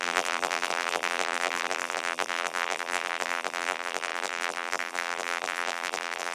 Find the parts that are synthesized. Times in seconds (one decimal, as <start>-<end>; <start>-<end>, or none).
0.0-6.3